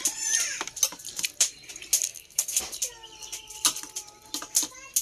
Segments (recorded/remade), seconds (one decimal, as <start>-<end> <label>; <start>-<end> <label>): 0.0-2.1 recorded; 2.1-2.6 remade; 2.6-5.0 recorded